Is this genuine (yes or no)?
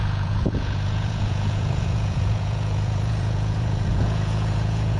no